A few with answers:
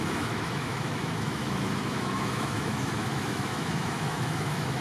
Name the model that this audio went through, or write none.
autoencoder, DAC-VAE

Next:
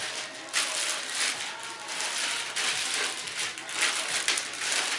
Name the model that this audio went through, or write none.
none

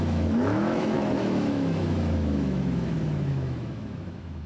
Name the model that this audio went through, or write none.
autoencoder, DAC-VAE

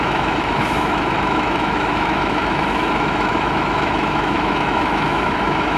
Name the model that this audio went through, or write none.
autoencoder, DAC-VAE